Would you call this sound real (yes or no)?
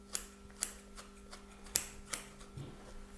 yes